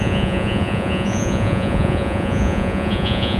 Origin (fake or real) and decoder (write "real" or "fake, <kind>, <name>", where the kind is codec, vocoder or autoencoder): fake, vocoder, Vocos